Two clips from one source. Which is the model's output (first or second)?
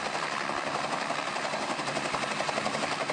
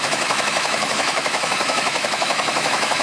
second